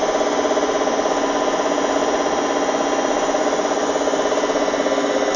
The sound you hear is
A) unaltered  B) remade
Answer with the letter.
B